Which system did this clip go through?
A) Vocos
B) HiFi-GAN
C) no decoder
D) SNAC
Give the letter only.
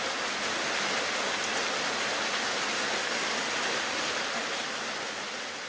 C